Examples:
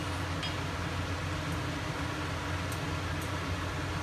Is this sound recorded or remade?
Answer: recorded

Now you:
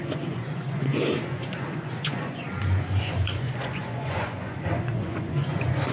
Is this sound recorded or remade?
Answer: remade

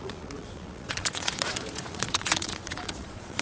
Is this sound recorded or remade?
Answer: remade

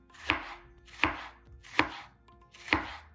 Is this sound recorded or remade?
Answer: recorded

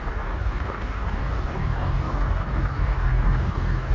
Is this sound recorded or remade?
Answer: remade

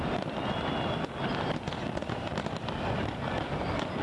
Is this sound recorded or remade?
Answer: recorded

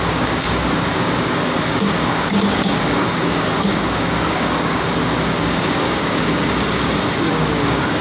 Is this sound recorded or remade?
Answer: remade